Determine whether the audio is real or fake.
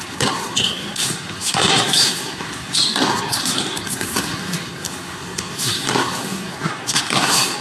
fake